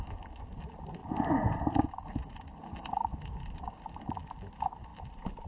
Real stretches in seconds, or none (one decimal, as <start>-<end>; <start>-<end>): 0.0-1.0; 4.3-4.9